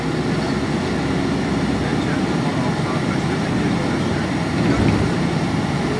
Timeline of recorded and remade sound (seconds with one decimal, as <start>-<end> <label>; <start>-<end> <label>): 0.0-1.9 recorded; 1.9-5.5 remade; 5.5-6.0 recorded